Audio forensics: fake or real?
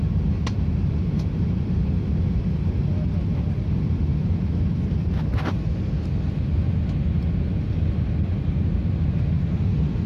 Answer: real